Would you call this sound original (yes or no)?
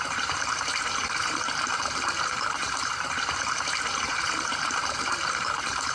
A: no